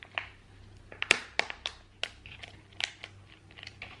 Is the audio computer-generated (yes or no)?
no